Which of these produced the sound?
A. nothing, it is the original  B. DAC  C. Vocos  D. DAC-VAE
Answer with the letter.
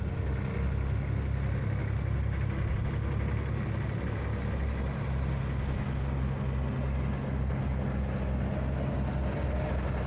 A